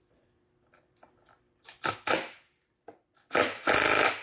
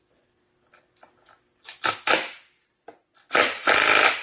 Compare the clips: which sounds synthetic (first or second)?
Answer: first